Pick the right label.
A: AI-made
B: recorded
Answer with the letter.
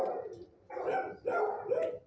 A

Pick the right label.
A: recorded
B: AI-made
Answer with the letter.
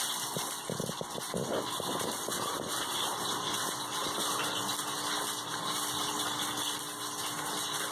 A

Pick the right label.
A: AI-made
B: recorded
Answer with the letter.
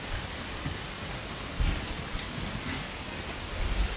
A